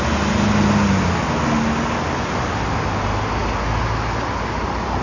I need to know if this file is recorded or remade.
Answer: recorded